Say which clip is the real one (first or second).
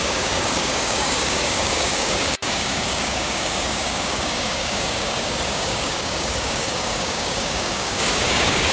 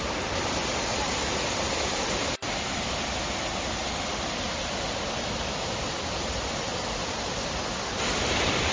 second